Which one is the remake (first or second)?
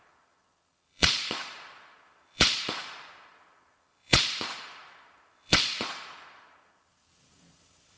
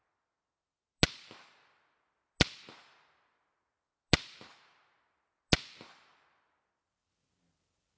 first